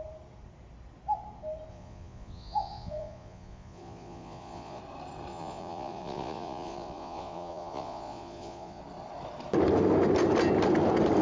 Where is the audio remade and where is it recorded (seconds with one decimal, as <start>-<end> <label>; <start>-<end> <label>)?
0.0-1.7 recorded; 1.7-4.8 remade; 4.8-5.3 recorded; 5.3-8.8 remade; 8.8-11.2 recorded